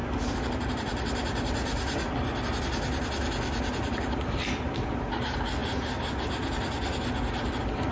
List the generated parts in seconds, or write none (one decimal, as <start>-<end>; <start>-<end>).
none

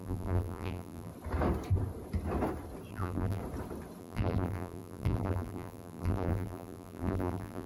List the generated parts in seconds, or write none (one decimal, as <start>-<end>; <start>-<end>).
0.0-1.1; 2.9-3.4; 4.0-7.7